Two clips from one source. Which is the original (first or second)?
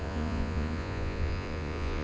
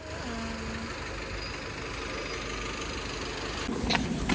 second